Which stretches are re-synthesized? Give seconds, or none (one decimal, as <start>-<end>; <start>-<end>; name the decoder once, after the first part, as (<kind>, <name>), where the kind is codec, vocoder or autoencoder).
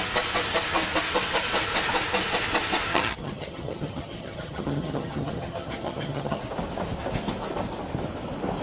2.9-6.4 (vocoder, HiFi-GAN)